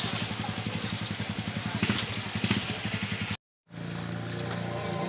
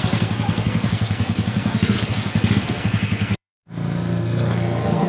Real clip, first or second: first